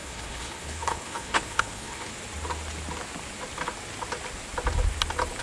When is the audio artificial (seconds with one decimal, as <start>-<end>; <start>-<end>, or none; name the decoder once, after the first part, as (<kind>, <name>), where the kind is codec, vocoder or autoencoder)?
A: 0.0-2.1 (codec, HILCodec)